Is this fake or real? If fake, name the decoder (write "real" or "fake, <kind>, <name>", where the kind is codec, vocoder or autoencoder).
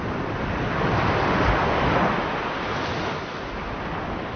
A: real